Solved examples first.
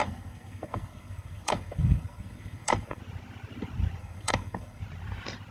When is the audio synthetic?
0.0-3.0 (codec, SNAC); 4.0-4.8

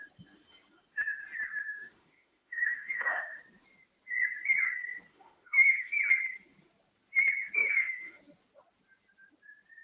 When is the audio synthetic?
1.6-3.4 (autoencoder, DAC-VAE); 5.1-6.0; 7.6-8.2

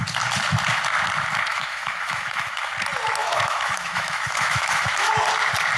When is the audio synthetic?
1.5-2.7 (autoencoder, DAC-VAE); 3.2-5.1

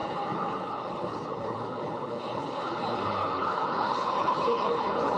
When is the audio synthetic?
0.0-5.2 (codec, HILCodec)